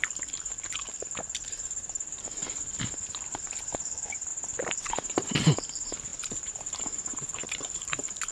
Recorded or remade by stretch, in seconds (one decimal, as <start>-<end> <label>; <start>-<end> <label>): 0.0-2.4 remade; 2.4-3.2 recorded; 3.2-4.3 remade; 4.3-5.0 recorded; 5.0-8.3 remade